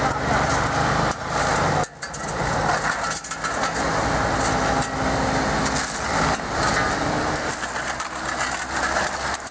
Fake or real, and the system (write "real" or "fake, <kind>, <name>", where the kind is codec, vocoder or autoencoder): real